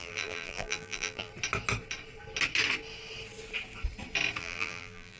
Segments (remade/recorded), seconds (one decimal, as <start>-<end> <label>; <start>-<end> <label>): 0.0-1.3 remade; 1.3-4.4 recorded; 4.4-5.2 remade